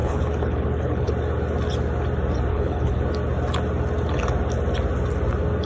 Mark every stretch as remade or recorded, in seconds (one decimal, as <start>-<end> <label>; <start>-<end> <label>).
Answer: 0.0-1.1 remade; 1.1-2.5 recorded; 2.5-3.0 remade; 3.0-5.7 recorded